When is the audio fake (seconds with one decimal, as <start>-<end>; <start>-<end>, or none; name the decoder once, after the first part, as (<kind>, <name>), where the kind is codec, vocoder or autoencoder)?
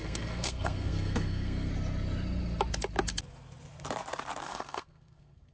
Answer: 0.0-1.7 (codec, SNAC); 4.4-5.5